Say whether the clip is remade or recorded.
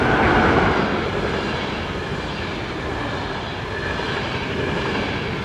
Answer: recorded